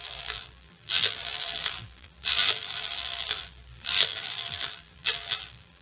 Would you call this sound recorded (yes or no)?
no